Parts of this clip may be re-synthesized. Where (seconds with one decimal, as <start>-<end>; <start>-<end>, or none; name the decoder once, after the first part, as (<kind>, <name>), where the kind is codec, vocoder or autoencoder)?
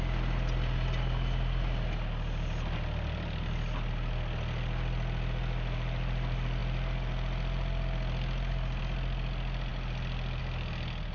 none